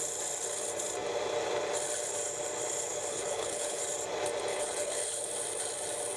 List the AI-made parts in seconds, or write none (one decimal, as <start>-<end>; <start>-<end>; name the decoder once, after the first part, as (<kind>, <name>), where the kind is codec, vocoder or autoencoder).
3.1-3.8 (codec, HILCodec); 4.5-5.3